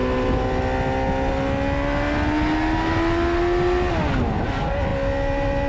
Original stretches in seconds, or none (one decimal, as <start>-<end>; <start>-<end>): 0.0-5.7